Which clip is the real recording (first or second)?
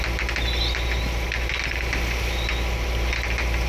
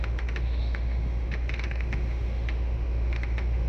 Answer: first